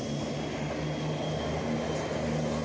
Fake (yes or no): no